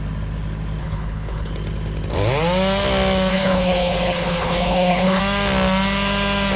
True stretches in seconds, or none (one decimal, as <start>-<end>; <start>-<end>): 0.0-0.8; 1.5-3.3; 5.2-6.6